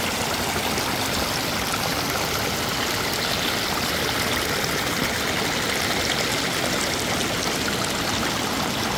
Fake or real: real